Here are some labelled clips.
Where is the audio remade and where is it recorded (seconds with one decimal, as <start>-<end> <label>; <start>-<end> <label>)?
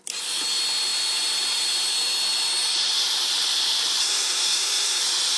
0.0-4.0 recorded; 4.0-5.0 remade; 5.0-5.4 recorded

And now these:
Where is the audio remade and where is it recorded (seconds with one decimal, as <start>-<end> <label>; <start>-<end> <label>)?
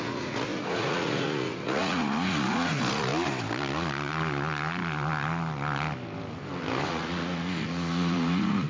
0.0-3.1 remade; 3.1-6.9 recorded; 6.9-8.7 remade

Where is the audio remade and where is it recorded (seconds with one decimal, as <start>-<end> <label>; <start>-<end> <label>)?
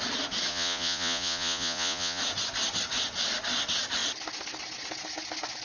0.0-0.5 recorded; 0.5-2.2 remade; 2.2-5.6 recorded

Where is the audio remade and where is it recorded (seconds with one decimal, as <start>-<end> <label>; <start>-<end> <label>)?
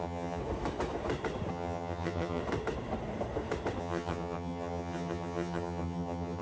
0.0-0.4 remade; 0.4-1.5 recorded; 1.5-2.4 remade; 2.4-3.8 recorded; 3.8-6.4 remade